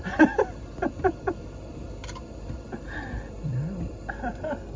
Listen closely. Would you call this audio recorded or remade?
remade